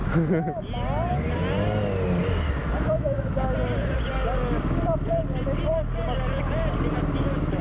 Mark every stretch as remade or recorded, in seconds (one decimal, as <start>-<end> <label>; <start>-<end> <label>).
0.0-0.6 remade; 0.6-2.6 recorded; 2.6-3.3 remade; 3.3-7.6 recorded